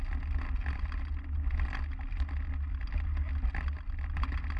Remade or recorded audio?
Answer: recorded